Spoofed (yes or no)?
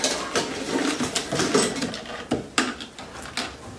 no